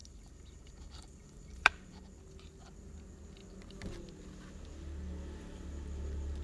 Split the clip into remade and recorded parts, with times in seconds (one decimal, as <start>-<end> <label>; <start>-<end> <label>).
0.0-2.2 remade; 2.2-6.4 recorded